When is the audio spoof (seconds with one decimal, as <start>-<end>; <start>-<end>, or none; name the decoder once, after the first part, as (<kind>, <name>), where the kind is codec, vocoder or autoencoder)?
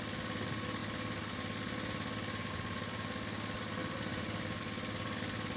none